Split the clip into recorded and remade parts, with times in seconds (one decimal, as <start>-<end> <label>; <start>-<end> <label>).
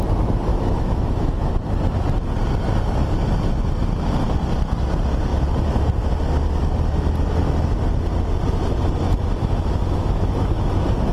0.0-0.5 recorded; 0.5-1.5 remade; 1.5-9.4 recorded; 9.4-10.6 remade; 10.6-11.1 recorded